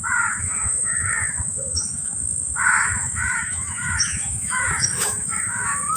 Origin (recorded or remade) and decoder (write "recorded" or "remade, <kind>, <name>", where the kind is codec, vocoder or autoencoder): remade, autoencoder, DAC-VAE